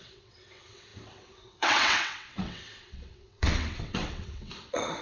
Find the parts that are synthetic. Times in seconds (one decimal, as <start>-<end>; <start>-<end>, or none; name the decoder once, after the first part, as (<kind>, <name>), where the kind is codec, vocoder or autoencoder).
0.0-5.0 (vocoder, WaveNeXt)